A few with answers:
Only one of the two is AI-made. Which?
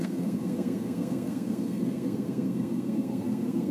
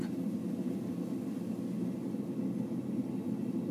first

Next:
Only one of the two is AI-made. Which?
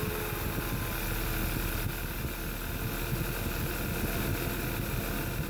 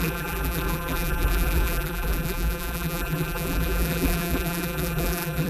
second